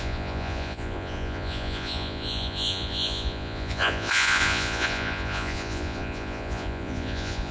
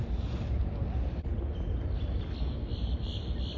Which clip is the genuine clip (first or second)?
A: second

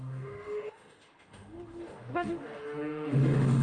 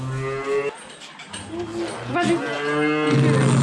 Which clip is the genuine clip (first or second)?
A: second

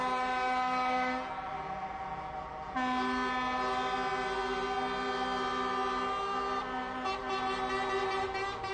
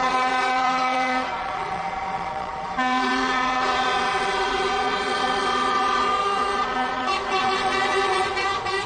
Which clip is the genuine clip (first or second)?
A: first